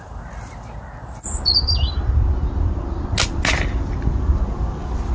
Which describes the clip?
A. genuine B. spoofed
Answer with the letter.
A